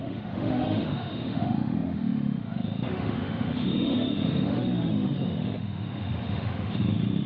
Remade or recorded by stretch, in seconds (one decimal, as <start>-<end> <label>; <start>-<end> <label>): 0.0-7.3 remade